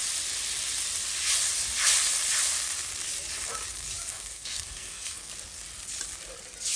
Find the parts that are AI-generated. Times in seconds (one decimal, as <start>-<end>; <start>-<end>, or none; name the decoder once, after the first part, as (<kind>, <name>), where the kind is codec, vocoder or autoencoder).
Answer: 4.1-5.3 (codec, SNAC)